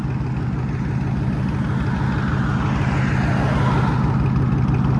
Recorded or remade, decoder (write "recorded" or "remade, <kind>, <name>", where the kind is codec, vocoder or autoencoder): recorded